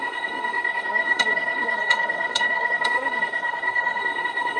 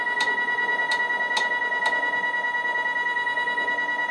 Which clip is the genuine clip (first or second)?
second